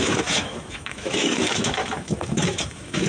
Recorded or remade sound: remade